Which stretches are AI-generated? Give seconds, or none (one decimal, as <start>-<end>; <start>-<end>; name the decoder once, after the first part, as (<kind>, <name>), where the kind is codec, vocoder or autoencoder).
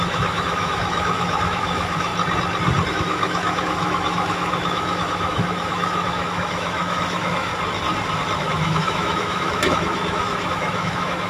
0.0-2.1 (autoencoder, DAC-VAE); 2.9-7.5; 8.4-11.3